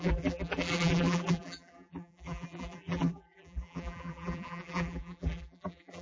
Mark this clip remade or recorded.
remade